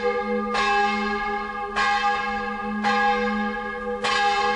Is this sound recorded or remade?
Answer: recorded